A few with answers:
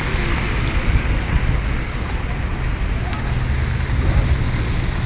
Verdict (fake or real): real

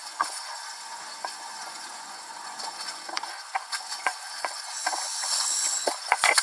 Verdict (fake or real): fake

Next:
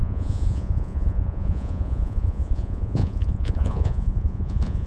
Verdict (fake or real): fake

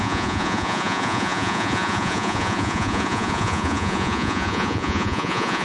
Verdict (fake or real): fake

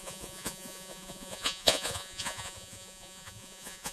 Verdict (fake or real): fake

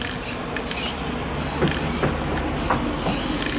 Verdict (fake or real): real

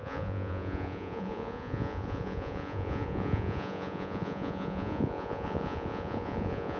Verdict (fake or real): fake